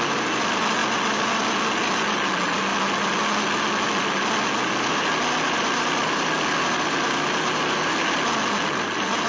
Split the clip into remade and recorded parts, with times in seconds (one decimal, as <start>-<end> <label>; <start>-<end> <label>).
0.0-9.3 recorded